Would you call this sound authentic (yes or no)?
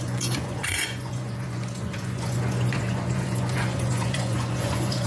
no